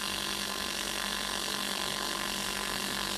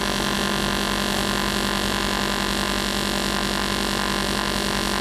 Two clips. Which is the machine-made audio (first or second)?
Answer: first